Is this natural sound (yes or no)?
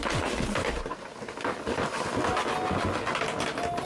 yes